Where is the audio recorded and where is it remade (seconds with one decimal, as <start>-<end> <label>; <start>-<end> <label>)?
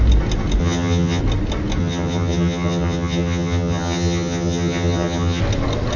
0.0-0.6 recorded; 0.6-1.2 remade; 1.2-1.8 recorded; 1.8-5.4 remade; 5.4-6.0 recorded